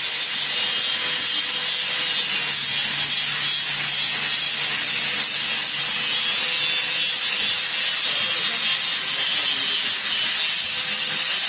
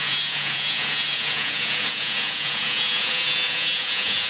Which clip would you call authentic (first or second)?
first